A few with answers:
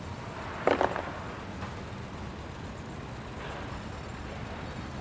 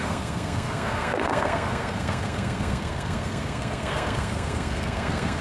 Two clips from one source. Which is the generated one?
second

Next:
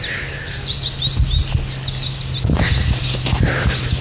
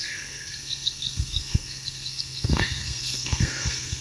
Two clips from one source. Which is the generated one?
second